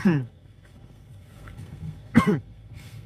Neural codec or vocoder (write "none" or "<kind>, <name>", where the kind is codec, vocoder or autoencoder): codec, SNAC